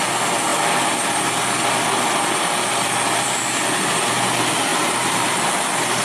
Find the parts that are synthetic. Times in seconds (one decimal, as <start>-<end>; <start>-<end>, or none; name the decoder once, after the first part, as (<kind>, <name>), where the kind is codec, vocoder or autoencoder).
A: 4.7-5.4 (vocoder, BigVGAN v2)